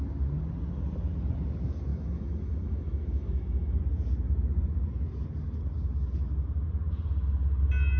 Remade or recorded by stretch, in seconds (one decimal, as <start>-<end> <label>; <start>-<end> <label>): 0.0-1.9 recorded; 1.9-3.8 remade; 3.8-8.0 recorded